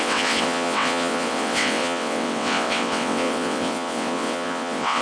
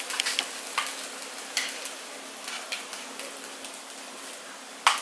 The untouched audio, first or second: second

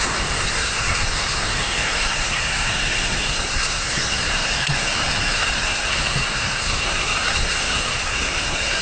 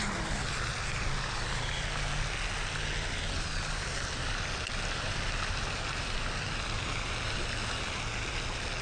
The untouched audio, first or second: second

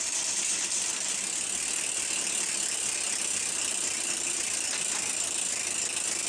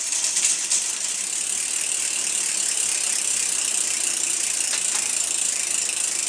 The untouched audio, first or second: first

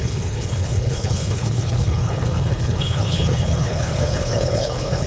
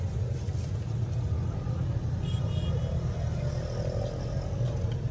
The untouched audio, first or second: second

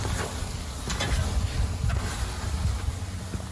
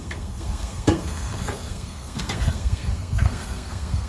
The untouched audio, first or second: first